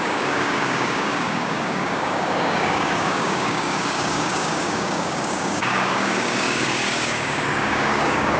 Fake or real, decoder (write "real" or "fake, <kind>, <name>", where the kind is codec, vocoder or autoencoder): fake, codec, DAC